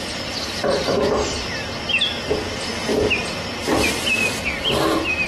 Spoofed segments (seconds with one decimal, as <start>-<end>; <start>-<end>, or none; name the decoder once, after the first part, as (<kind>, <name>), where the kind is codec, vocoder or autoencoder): none